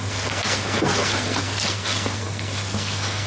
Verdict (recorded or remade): remade